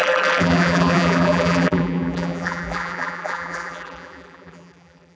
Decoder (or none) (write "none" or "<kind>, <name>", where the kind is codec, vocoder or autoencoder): vocoder, BigVGAN v2